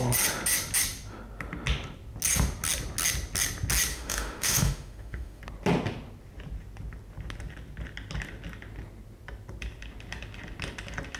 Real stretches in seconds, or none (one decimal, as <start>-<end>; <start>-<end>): 0.0-3.9; 5.4-11.2